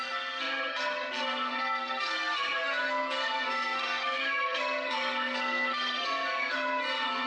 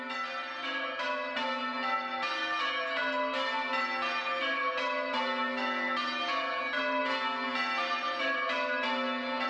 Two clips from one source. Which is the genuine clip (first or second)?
second